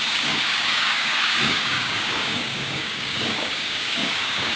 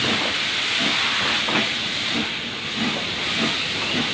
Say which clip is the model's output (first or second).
first